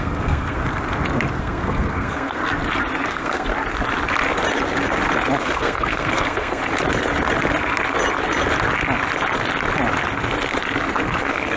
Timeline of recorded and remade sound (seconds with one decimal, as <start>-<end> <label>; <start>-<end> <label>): 0.0-0.6 remade; 0.6-1.4 recorded; 1.4-2.4 remade; 2.4-3.1 recorded; 3.1-3.5 remade; 3.5-5.4 recorded; 5.4-6.6 remade; 6.6-11.2 recorded; 11.2-11.6 remade